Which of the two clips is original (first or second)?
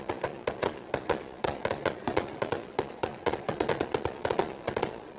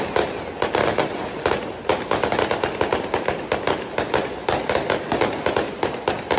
second